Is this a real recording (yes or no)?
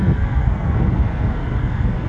no